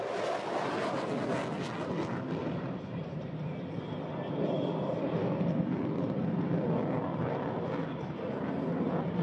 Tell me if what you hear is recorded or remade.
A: recorded